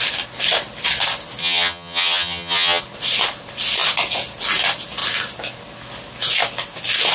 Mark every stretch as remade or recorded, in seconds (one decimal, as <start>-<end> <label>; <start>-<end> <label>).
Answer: 0.0-1.4 recorded; 1.4-2.8 remade; 2.8-7.1 recorded